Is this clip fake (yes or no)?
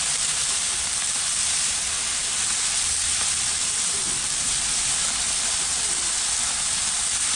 yes